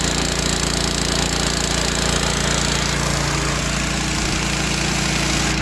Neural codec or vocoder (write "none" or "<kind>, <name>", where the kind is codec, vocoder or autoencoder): none